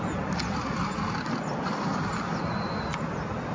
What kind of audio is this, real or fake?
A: real